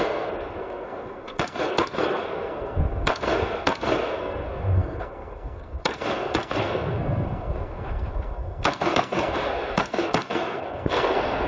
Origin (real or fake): fake